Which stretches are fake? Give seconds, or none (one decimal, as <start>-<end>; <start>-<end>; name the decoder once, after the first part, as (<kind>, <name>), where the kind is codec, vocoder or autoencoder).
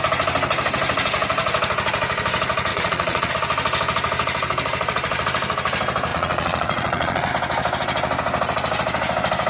2.7-3.3 (vocoder, Vocos); 6.1-7.3